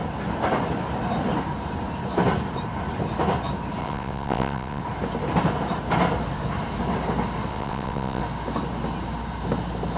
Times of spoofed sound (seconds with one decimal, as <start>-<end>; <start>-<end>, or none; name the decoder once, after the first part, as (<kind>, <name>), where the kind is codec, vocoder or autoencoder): 3.8-4.8 (vocoder, WaveNeXt); 7.5-8.2

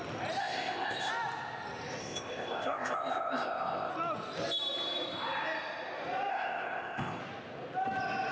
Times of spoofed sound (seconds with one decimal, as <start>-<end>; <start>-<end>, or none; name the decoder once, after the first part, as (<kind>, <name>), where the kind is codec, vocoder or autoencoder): 0.4-1.1 (codec, ZipCodec); 2.0-3.9; 6.3-7.2

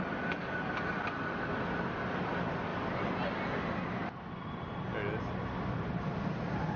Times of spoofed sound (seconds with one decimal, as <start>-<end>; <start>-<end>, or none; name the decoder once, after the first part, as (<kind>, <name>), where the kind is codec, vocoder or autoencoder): none

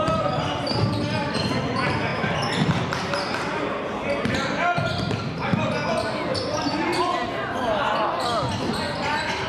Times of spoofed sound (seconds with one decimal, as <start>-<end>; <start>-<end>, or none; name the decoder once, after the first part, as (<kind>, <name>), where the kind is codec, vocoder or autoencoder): none